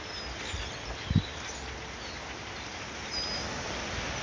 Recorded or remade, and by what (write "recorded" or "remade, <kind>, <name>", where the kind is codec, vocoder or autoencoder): recorded